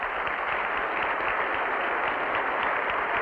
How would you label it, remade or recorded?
recorded